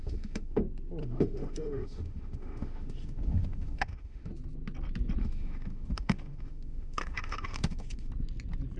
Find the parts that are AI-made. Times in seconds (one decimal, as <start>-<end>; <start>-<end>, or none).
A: 0.0-0.6; 1.0-4.3; 5.2-8.1